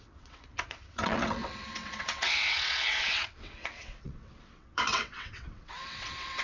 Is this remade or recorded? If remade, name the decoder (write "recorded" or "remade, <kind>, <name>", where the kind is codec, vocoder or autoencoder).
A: remade, vocoder, WaveNeXt